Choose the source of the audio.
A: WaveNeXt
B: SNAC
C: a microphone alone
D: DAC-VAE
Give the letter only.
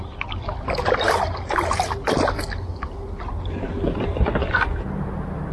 C